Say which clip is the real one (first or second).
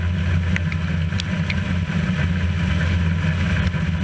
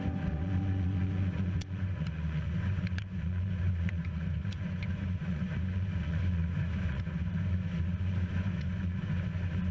first